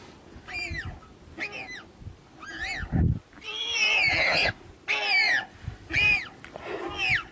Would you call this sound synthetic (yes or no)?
no